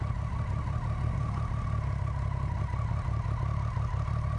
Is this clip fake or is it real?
real